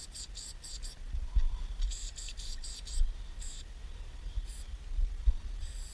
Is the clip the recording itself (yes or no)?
yes